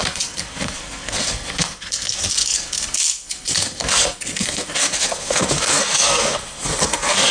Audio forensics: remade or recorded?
remade